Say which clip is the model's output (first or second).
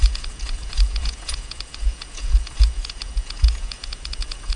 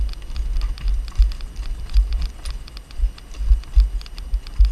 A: first